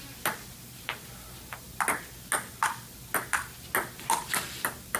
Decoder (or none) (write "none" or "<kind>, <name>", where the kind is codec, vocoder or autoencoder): none